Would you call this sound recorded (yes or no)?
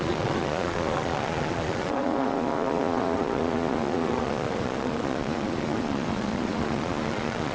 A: no